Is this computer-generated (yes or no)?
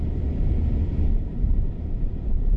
yes